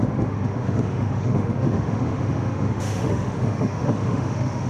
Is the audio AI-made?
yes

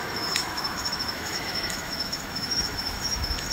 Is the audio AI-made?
yes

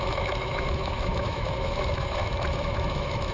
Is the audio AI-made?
yes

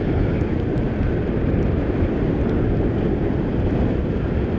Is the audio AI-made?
no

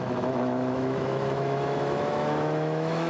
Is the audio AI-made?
yes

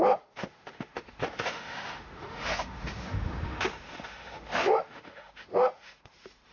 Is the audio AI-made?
yes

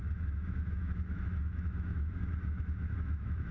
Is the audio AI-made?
yes